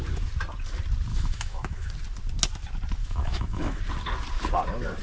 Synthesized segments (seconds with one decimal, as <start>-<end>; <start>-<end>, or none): 1.1-1.9; 3.0-3.8